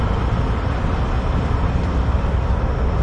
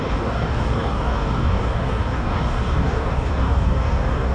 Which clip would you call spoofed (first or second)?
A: second